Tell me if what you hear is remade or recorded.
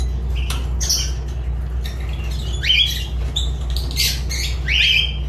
recorded